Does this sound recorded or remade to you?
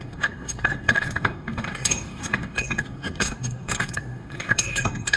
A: remade